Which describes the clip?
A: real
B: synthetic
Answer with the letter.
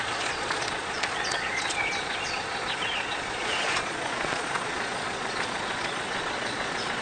B